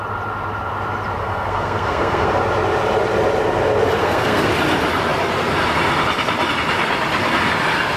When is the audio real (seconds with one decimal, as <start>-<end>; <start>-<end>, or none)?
0.0-1.2; 2.4-4.0; 4.5-8.0